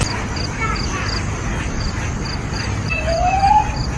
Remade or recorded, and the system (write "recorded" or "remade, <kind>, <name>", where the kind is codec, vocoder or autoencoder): recorded